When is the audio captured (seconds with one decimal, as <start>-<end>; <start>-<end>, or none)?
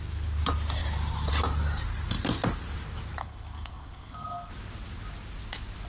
0.0-3.2; 4.5-5.9